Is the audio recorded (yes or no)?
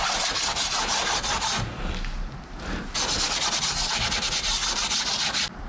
yes